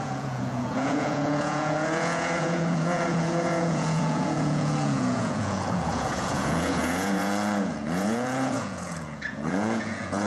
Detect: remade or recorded remade